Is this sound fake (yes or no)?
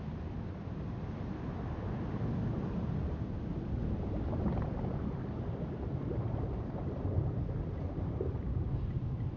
no